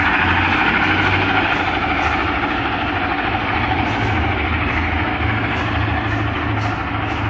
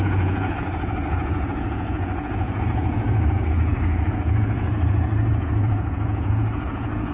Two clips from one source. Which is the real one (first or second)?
first